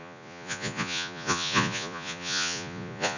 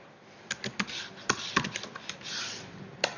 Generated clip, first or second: first